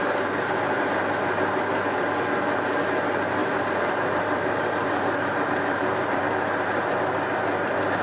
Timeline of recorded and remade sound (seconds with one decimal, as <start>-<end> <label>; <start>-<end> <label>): 0.0-3.4 recorded; 3.4-6.2 remade; 6.2-8.0 recorded